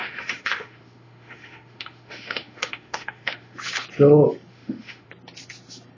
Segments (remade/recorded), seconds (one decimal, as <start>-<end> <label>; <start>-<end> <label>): 0.0-3.6 remade; 3.6-4.5 recorded; 4.5-5.1 remade; 5.1-6.0 recorded